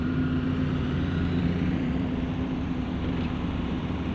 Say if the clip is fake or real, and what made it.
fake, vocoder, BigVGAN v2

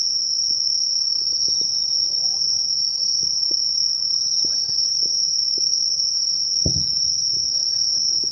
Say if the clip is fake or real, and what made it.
real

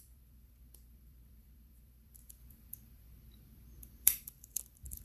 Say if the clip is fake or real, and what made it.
fake, vocoder, BigVGAN v2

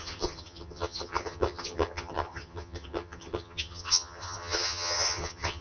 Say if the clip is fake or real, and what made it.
fake, vocoder, HiFi-GAN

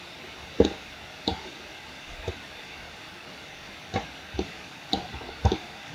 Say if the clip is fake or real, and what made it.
fake, codec, DAC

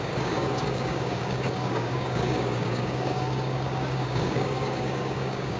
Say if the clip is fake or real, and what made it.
fake, codec, DAC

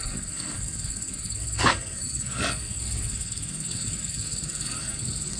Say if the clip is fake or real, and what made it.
fake, codec, SNAC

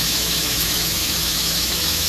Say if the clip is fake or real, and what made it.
fake, autoencoder, DAC-VAE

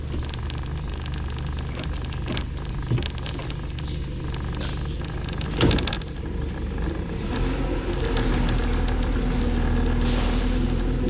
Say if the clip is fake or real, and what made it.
real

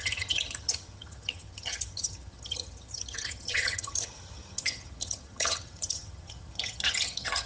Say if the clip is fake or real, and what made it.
fake, vocoder, HiFi-GAN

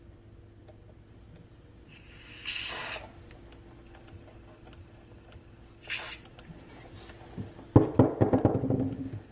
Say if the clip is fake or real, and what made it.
real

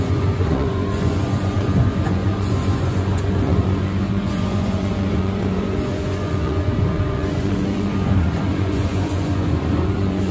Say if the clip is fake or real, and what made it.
fake, vocoder, Vocos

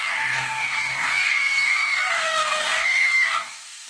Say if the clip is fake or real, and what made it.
fake, codec, DAC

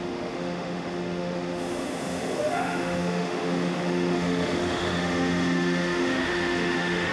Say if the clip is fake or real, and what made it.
fake, autoencoder, DAC-VAE